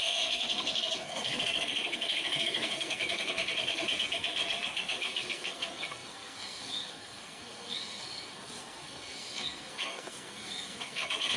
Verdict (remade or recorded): remade